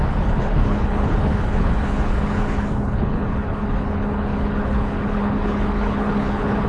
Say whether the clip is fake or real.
fake